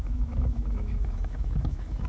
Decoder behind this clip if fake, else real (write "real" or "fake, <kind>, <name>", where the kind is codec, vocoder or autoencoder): fake, autoencoder, DAC-VAE